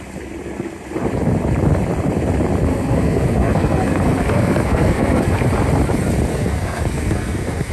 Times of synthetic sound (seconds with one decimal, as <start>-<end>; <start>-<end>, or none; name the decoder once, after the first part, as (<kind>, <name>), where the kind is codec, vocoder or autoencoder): 2.7-5.4 (codec, SNAC); 6.3-7.7